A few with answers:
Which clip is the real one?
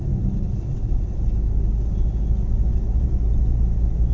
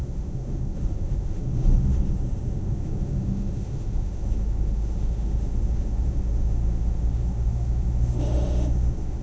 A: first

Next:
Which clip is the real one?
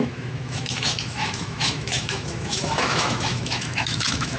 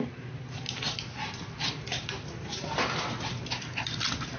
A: second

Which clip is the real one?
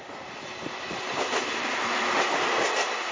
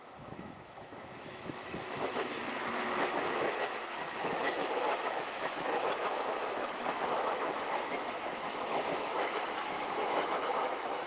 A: first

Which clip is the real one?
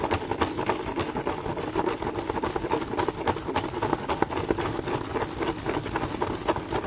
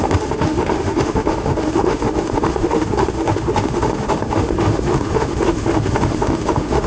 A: first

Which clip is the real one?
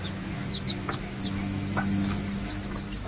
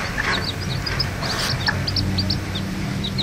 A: second